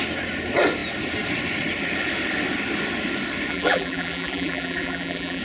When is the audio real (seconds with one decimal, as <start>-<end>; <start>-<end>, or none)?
0.0-3.5